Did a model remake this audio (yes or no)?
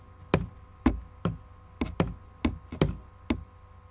no